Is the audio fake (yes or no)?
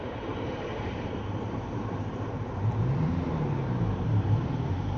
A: yes